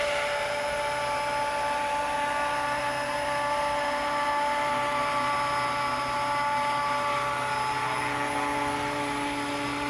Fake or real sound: real